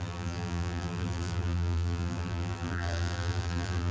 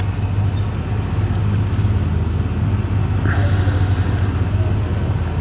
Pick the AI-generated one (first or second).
first